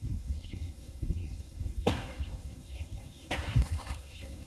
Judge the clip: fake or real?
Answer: fake